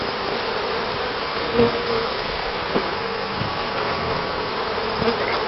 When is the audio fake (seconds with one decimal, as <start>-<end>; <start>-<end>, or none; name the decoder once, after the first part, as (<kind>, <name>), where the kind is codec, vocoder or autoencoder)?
1.2-4.5 (codec, SNAC)